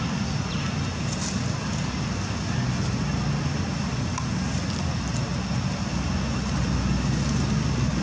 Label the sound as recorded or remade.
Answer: recorded